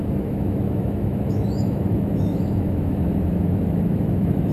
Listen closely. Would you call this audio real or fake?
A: fake